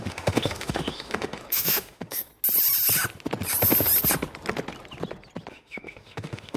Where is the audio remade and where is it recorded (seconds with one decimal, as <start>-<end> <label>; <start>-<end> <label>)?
0.0-2.3 remade; 2.3-5.5 recorded; 5.5-6.6 remade